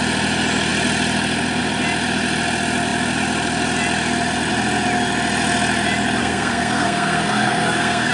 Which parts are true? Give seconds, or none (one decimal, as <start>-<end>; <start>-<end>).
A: 0.0-6.2

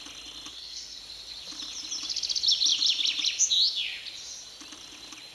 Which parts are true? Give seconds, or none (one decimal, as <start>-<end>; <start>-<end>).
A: 0.0-0.5; 1.0-5.3

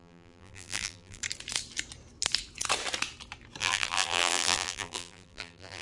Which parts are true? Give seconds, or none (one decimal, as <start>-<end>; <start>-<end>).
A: 1.2-3.6

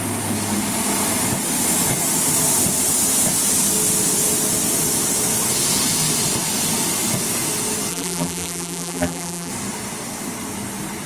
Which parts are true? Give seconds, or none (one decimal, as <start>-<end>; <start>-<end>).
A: 0.0-7.9; 9.5-11.1

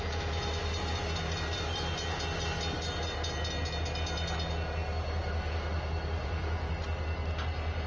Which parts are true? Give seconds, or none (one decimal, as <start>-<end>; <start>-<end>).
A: 0.0-6.2; 6.7-7.9

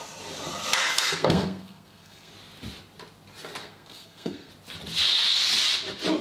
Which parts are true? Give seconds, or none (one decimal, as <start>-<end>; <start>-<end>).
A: 0.0-0.8; 2.3-3.6; 4.5-6.2

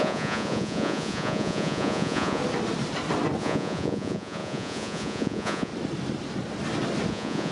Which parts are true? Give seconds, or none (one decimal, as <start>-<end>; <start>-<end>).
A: 2.4-3.4; 5.7-7.1